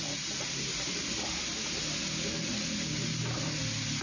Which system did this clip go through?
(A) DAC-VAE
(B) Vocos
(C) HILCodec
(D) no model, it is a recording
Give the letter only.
D